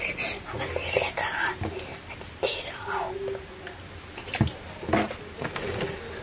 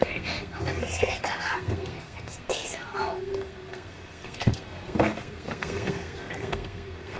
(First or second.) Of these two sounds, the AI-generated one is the second